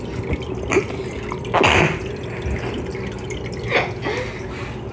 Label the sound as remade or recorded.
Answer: recorded